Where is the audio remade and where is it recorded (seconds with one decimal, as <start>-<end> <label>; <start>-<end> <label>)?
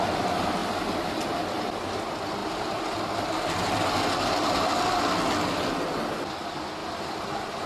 0.0-2.4 recorded; 2.4-3.0 remade; 3.0-6.8 recorded; 6.8-7.3 remade; 7.3-7.7 recorded